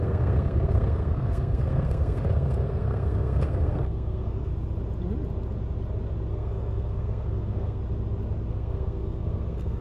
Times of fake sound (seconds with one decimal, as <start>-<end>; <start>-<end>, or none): 0.0-4.5; 6.3-7.8; 8.5-9.8